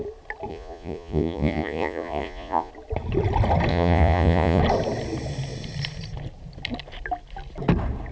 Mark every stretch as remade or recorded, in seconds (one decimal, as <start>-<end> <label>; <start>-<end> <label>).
0.0-0.5 recorded; 0.5-2.7 remade; 2.7-3.7 recorded; 3.7-4.6 remade; 4.6-8.1 recorded